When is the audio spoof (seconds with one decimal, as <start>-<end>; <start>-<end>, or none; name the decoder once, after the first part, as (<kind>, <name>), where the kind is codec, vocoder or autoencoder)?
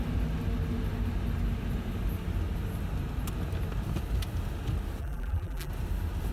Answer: 5.0-5.7 (vocoder, BigVGAN v2)